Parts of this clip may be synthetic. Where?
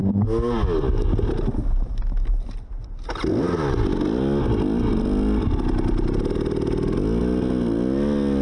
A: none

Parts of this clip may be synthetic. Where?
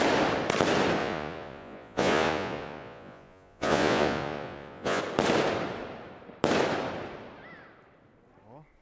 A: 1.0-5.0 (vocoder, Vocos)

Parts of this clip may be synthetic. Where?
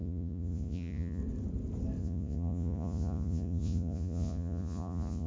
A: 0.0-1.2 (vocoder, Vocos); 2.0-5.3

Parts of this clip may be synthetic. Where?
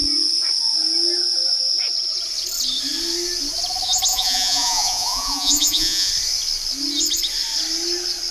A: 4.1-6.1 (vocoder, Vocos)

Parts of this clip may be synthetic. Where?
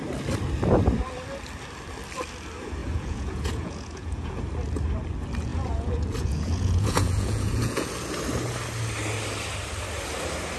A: 2.8-4.4 (vocoder, Vocos); 5.5-7.9